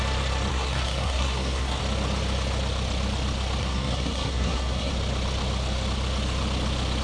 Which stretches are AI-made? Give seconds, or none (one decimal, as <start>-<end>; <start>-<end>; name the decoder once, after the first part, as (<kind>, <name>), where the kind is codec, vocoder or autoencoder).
0.5-1.8 (codec, SNAC); 3.6-4.9